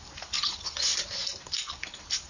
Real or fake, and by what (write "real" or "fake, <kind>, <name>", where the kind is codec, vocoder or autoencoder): real